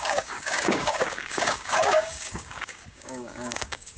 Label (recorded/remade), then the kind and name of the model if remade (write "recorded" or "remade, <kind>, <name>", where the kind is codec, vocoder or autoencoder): remade, codec, DAC